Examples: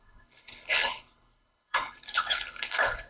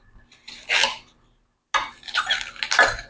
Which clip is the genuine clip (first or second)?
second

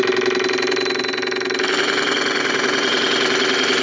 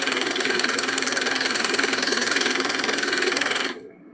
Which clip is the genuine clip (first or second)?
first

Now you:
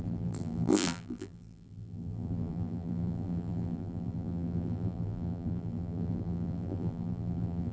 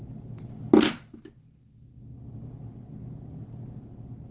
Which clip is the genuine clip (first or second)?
second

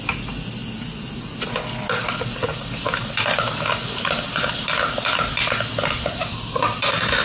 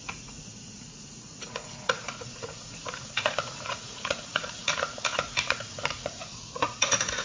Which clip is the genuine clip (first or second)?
first